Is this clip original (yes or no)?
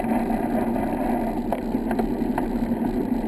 yes